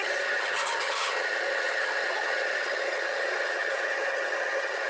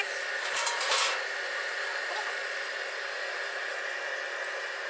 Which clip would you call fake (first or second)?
first